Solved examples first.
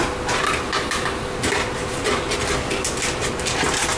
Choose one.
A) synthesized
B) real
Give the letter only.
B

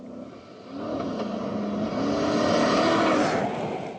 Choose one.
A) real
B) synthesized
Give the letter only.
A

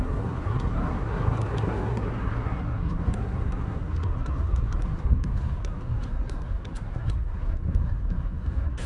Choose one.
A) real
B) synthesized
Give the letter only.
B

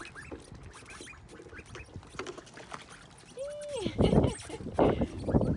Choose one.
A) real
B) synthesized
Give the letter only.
A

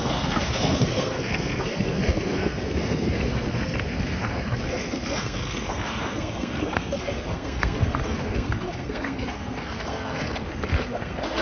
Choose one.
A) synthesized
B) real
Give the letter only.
A